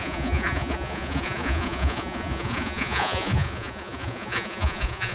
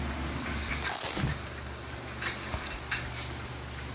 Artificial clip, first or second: first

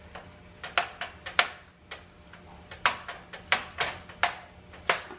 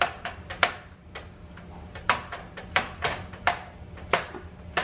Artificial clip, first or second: second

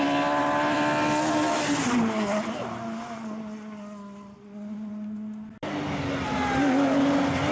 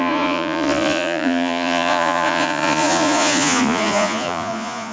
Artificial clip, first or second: second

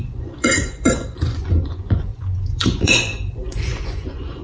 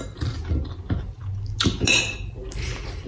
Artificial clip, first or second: first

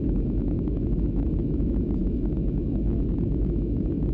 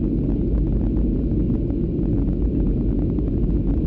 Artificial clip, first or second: first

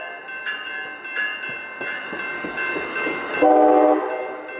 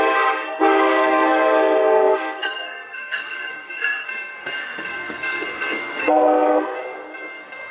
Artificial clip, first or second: second